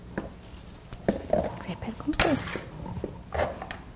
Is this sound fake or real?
real